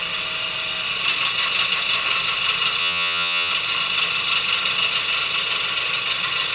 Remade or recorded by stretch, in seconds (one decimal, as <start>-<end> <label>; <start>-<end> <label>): 0.0-2.8 recorded; 2.8-3.5 remade; 3.5-6.5 recorded